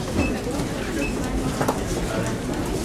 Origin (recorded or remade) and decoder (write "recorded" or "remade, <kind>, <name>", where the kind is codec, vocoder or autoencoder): recorded